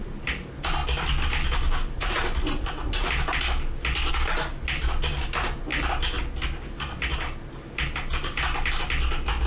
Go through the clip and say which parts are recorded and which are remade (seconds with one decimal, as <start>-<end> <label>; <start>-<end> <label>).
0.0-9.5 recorded